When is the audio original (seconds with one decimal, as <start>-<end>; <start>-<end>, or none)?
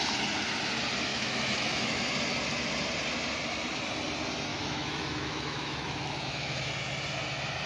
0.0-1.1; 2.0-4.5; 6.7-7.7